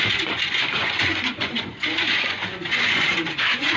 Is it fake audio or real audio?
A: fake